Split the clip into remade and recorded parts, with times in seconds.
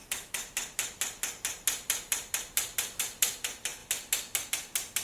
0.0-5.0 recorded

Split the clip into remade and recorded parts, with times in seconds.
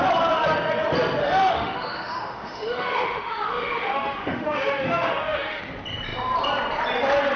0.0-1.2 recorded; 1.2-5.6 remade; 5.6-7.4 recorded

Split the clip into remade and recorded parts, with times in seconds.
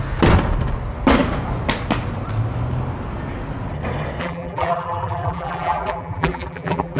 0.0-4.2 recorded; 4.2-7.0 remade